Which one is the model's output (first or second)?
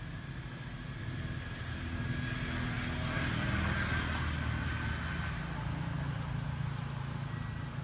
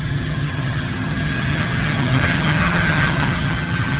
second